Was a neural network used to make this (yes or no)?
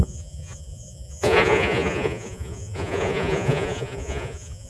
yes